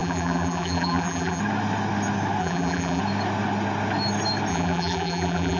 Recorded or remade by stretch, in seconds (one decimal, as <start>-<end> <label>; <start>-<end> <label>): 0.0-1.4 remade; 1.4-2.4 recorded; 2.4-3.0 remade; 3.0-4.5 recorded; 4.5-5.6 remade